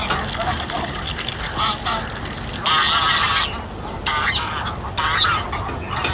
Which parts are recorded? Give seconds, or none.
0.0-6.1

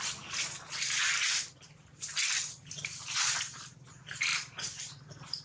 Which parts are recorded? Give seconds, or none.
0.0-5.4

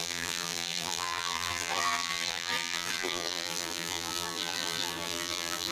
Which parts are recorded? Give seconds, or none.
none